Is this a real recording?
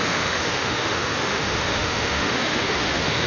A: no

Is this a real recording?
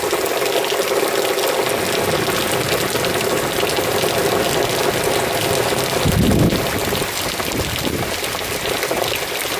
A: yes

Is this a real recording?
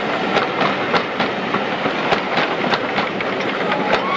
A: yes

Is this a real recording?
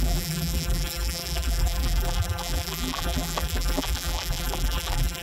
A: no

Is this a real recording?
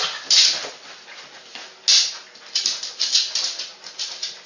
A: yes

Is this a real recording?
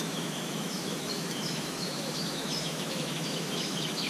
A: no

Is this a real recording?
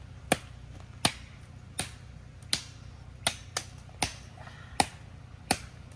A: yes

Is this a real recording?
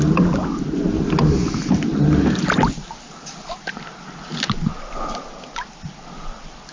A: yes